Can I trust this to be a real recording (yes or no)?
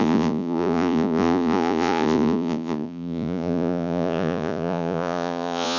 no